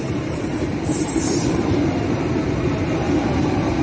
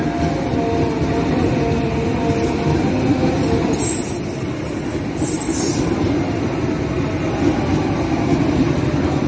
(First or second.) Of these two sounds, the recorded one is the second